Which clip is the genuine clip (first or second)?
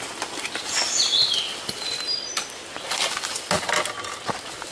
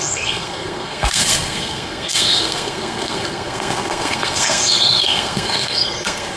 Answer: first